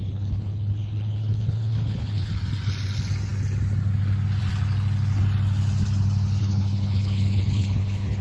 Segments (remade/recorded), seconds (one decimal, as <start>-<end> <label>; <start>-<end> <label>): 0.0-2.3 remade; 2.3-6.4 recorded; 6.4-8.2 remade